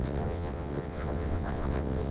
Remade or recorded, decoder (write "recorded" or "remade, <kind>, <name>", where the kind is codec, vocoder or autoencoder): remade, vocoder, WaveNeXt